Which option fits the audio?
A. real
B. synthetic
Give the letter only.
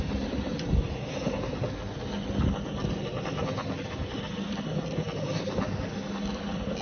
A